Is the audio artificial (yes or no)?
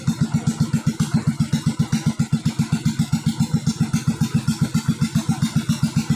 no